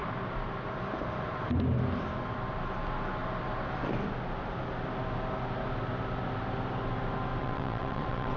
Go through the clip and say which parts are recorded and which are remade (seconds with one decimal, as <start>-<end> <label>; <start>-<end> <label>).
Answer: 0.0-7.4 recorded; 7.4-8.4 remade